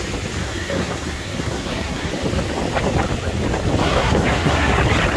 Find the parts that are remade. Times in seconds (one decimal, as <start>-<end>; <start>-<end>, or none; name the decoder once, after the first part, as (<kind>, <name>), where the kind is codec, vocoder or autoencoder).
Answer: 0.4-2.1 (codec, SNAC); 3.8-4.8